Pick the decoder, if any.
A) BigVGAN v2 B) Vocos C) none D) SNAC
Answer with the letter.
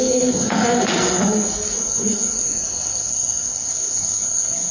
D